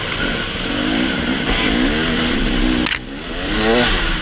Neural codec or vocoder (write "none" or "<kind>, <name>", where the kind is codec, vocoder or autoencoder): none